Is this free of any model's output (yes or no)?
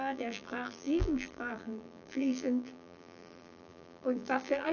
no